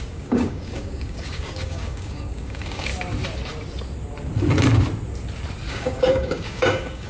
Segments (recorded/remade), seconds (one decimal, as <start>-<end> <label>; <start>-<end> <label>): 0.0-2.9 remade; 2.9-5.7 recorded; 5.7-7.1 remade